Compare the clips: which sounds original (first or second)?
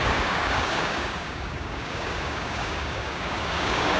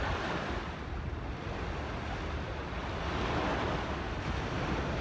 second